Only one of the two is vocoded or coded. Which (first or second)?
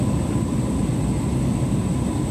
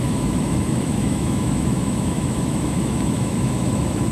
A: second